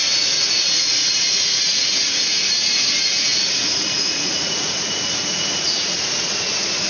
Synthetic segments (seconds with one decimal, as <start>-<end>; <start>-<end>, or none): 0.0-6.9